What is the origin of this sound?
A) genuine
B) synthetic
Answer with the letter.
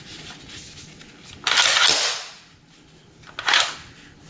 A